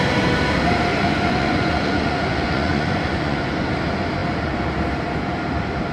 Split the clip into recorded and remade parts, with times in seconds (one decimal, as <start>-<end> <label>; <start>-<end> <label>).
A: 0.0-0.9 recorded; 0.9-3.5 remade; 3.5-5.9 recorded